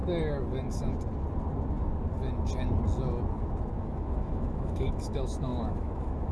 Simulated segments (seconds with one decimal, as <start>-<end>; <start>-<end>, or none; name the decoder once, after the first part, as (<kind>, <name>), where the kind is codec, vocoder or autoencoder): 3.8-6.3 (autoencoder, DAC-VAE)